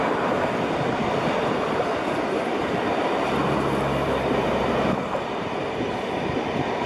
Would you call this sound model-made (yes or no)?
no